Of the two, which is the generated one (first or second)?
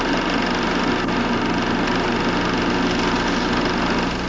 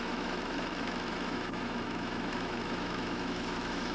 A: second